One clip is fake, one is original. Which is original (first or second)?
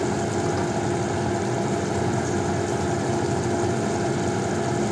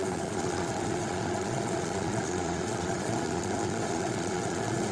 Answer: first